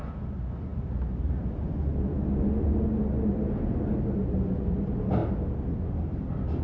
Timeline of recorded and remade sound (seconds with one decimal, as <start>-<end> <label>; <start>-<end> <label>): 0.0-6.6 recorded